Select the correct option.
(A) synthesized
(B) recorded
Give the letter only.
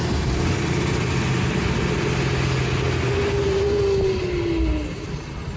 B